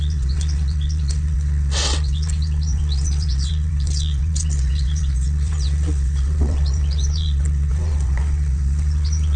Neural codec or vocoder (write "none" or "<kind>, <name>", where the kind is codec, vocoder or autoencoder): vocoder, WaveNeXt